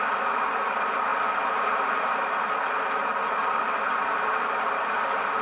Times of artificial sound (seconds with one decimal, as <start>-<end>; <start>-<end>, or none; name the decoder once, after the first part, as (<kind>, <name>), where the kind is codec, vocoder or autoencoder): none